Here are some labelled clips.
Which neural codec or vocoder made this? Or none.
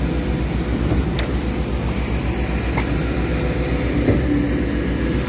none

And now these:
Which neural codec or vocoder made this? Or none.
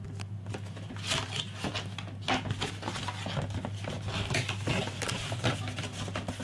none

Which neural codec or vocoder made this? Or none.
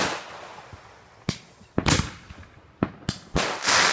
none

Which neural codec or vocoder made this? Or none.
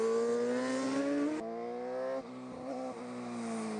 none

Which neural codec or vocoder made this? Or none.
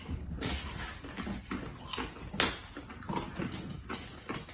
none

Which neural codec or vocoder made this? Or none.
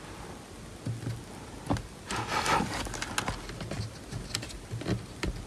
none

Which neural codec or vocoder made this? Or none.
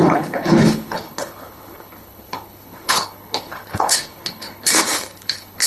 codec, HILCodec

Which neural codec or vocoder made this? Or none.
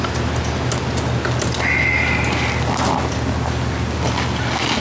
none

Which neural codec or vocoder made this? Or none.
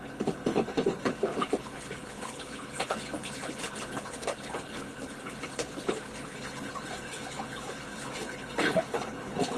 codec, HILCodec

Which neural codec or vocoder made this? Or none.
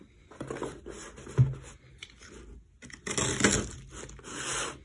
none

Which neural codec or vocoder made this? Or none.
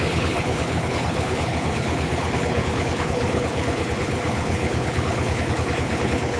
codec, HILCodec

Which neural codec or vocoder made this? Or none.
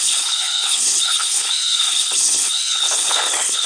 codec, HILCodec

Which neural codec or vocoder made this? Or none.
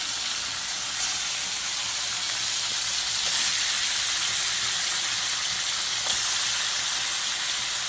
none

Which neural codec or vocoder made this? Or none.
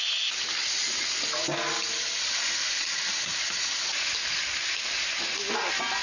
none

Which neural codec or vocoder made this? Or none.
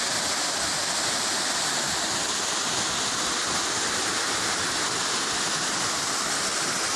none